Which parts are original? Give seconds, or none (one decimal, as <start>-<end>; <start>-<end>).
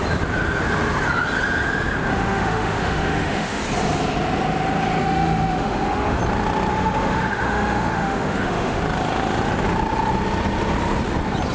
0.0-2.1; 3.6-5.0; 6.2-6.7; 8.8-11.5